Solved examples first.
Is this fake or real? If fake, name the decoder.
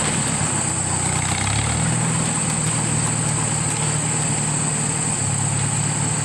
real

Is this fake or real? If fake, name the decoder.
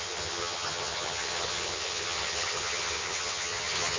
fake, vocoder, HiFi-GAN